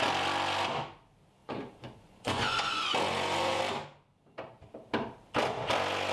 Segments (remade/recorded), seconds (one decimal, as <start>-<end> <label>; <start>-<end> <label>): 0.0-1.4 recorded; 1.4-3.6 remade; 3.6-6.1 recorded